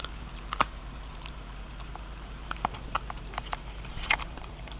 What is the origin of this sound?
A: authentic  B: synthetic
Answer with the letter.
B